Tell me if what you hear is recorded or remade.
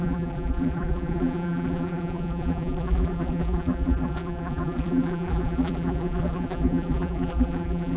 remade